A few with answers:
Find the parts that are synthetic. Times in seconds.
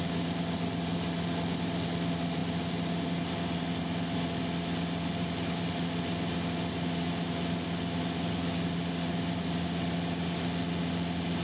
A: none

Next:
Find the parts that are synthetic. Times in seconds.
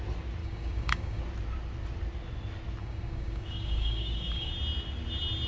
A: 0.4-1.2 (codec, DAC); 2.8-4.5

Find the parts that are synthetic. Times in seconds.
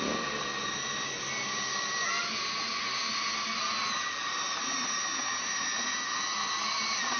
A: 1.4-2.1 (codec, DAC)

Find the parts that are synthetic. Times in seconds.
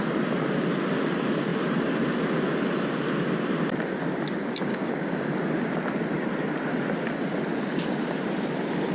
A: 4.7-5.3 (codec, DAC)